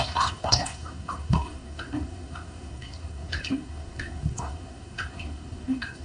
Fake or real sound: fake